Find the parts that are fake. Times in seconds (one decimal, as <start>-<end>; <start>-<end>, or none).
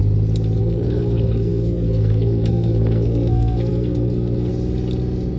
0.6-4.5